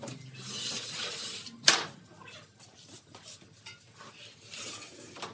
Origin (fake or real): real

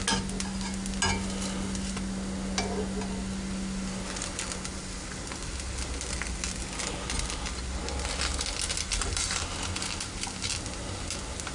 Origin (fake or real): real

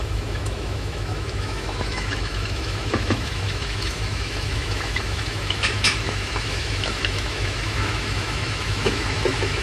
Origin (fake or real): fake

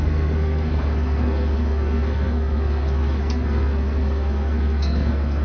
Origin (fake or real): fake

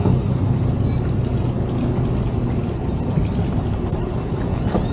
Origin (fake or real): real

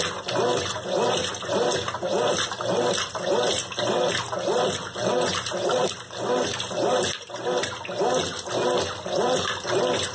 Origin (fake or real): real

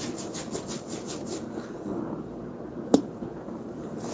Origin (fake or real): real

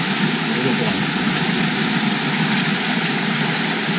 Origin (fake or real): real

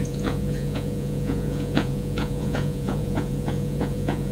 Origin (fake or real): fake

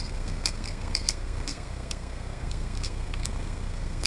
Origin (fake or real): fake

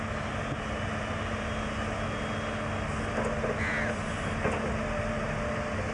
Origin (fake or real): real